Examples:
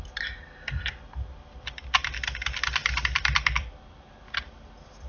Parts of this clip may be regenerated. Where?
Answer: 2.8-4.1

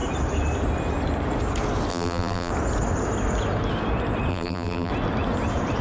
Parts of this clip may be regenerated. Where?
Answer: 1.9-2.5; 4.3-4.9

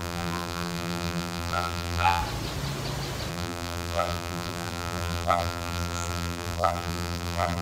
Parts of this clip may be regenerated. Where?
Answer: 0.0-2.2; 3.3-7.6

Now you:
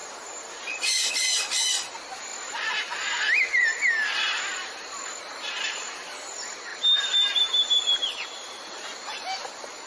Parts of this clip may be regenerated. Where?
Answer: 0.0-1.1; 6.7-9.5